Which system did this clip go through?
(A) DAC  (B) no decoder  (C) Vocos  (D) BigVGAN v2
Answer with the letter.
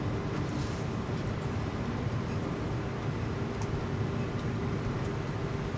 B